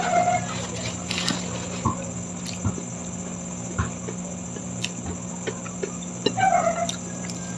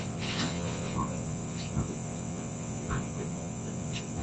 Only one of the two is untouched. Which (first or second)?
first